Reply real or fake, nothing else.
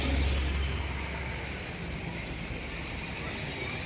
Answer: real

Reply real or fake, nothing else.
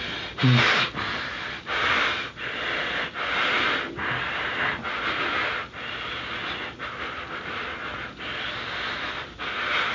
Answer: real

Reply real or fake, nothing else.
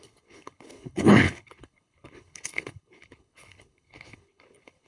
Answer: fake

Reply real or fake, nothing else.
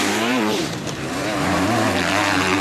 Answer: fake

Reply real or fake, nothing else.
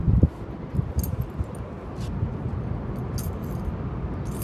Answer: real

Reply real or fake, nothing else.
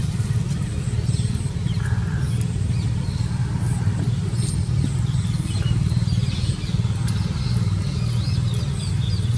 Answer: real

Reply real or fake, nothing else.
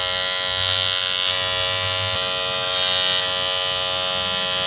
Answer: real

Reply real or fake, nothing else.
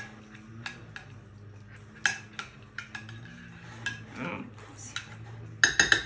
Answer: real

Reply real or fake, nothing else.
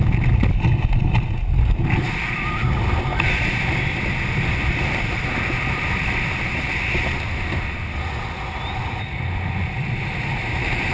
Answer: real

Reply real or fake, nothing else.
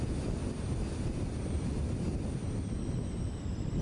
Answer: real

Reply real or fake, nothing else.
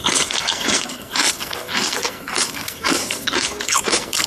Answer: fake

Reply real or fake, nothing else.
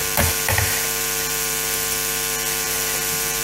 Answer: fake